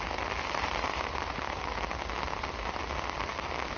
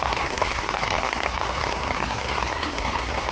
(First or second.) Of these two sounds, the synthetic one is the second